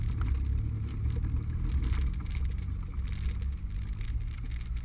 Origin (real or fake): real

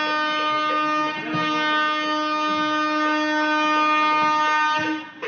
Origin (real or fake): real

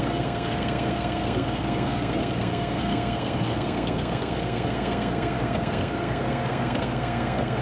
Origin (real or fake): fake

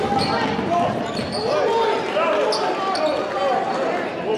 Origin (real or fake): real